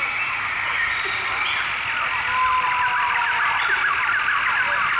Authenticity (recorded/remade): recorded